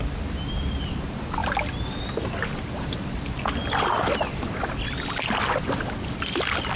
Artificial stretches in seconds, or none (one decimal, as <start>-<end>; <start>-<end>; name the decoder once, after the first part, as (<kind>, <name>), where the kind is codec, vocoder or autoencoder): none